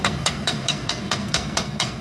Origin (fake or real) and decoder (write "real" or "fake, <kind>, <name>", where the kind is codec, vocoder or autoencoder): fake, codec, SNAC